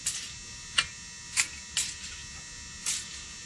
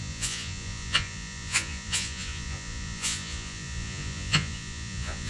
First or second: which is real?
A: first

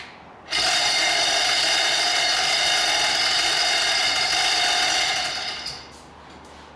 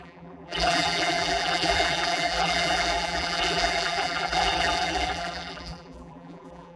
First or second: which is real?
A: first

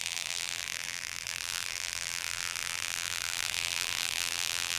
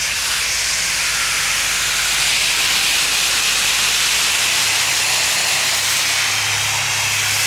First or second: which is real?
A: second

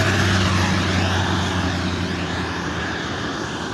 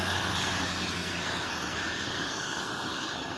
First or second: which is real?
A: first